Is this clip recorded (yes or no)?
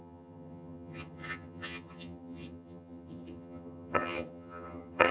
no